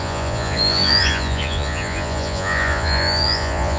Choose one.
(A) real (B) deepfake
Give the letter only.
B